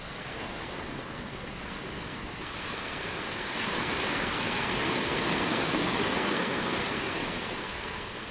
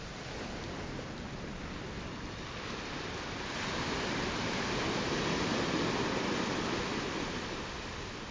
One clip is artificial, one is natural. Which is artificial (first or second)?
first